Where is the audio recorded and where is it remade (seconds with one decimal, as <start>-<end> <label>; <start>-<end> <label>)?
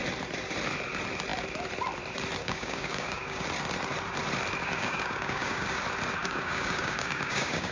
0.0-2.4 recorded; 2.4-3.4 remade; 3.4-4.6 recorded; 4.6-5.8 remade; 5.8-6.2 recorded; 6.2-7.7 remade